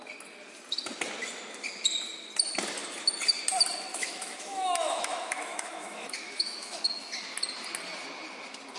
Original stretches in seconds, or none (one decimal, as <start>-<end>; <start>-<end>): 0.0-3.9; 6.8-8.8